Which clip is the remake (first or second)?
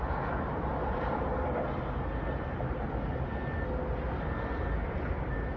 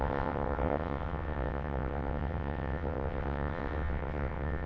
second